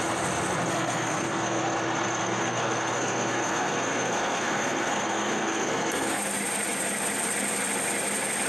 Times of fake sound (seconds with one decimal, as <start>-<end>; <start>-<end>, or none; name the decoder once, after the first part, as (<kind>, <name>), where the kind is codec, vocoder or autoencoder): 0.7-1.6 (codec, SNAC); 2.2-6.2

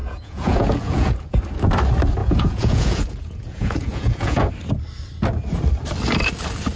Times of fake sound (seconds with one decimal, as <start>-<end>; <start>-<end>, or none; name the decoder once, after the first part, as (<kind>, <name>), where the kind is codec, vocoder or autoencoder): 0.0-1.4 (vocoder, Vocos); 2.2-4.5

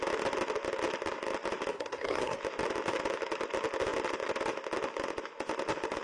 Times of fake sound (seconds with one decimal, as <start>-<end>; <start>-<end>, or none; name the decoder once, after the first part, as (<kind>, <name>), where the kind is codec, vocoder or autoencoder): 1.7-2.4 (codec, SNAC)

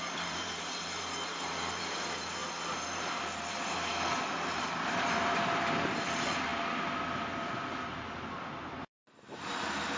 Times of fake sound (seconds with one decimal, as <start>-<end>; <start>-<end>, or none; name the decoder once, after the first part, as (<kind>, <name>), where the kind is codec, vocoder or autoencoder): 0.0-2.4 (vocoder, BigVGAN v2); 3.2-3.9; 4.8-6.5; 7.4-8.9; 9.6-10.0

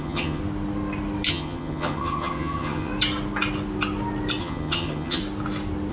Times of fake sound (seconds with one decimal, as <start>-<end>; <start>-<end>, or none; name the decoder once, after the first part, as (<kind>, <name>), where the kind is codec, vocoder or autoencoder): 0.0-0.4 (vocoder, HiFi-GAN); 1.3-2.9; 4.4-5.2

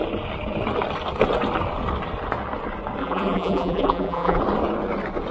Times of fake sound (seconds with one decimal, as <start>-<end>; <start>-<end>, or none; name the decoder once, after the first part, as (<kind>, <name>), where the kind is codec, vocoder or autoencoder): 3.0-4.4 (vocoder, BigVGAN v2)